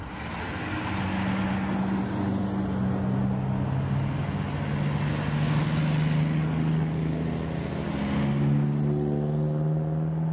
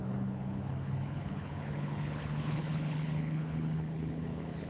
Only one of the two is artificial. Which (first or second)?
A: second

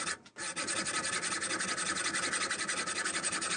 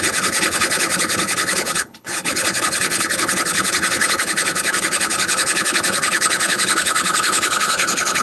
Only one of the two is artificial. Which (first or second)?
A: second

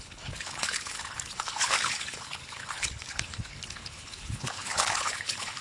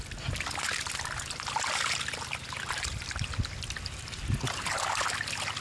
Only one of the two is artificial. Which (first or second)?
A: first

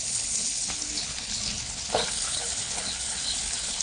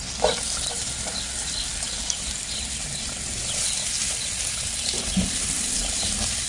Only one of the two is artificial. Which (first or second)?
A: first